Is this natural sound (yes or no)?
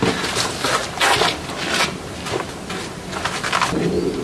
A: yes